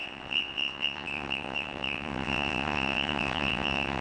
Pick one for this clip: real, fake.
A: fake